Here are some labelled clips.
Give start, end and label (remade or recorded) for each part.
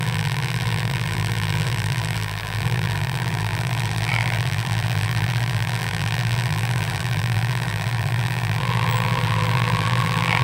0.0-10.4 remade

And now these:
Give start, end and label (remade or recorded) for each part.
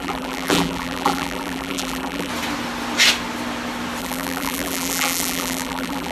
0.0-2.3 remade; 2.3-4.0 recorded; 4.0-6.1 remade